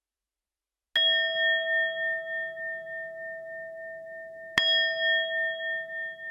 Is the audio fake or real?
real